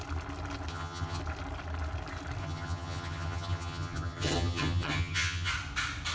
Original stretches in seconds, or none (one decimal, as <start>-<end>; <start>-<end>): 0.0-0.7; 1.2-2.4; 5.5-6.1